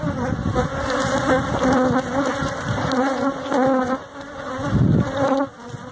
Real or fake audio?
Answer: real